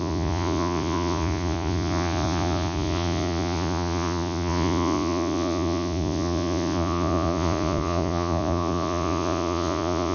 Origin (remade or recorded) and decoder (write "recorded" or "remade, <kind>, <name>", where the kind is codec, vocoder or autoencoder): remade, vocoder, Vocos